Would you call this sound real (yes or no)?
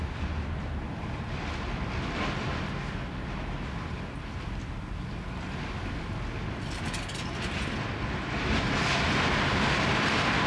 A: yes